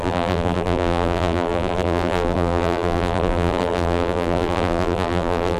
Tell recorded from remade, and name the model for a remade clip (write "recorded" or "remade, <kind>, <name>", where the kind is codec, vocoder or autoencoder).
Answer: remade, vocoder, BigVGAN v2